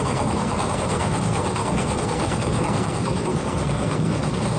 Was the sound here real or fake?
fake